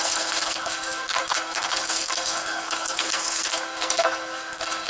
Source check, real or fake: fake